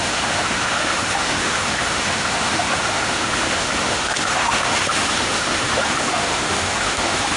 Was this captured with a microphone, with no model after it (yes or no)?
no